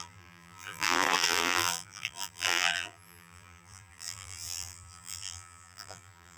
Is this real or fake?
fake